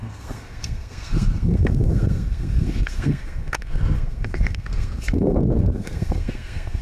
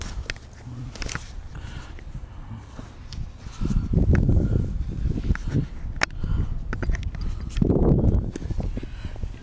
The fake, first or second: first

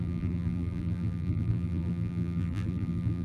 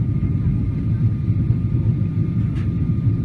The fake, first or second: first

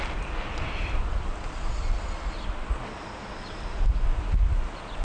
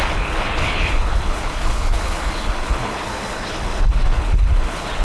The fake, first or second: second